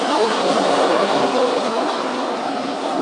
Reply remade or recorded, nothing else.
remade